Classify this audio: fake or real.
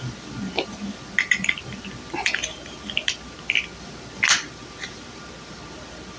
real